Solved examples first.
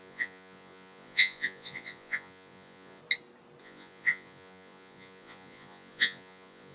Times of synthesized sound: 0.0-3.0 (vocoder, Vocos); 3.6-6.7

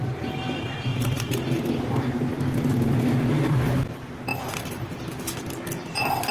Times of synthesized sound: 0.9-1.6 (vocoder, BigVGAN v2); 4.3-5.0

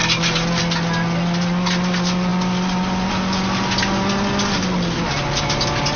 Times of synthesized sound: none

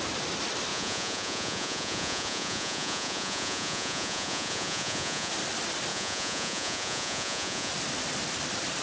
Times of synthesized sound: 0.7-5.3 (vocoder, Vocos); 5.9-7.7

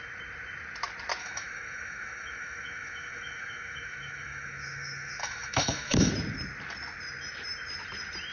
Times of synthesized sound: 1.2-6.1 (autoencoder, DAC-VAE)